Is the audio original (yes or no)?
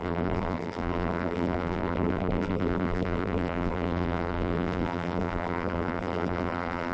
no